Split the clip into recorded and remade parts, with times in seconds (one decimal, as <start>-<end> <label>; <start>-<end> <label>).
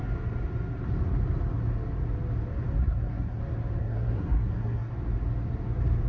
0.0-2.8 recorded; 2.8-3.4 remade; 3.4-3.8 recorded; 3.8-4.9 remade; 4.9-6.1 recorded